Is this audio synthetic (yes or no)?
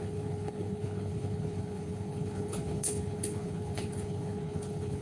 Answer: yes